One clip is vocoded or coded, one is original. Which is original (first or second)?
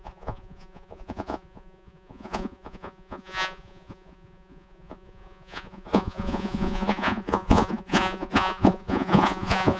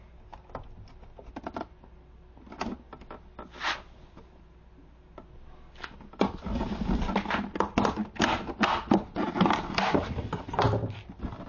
second